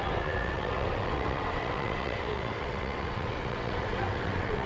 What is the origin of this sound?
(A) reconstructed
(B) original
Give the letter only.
A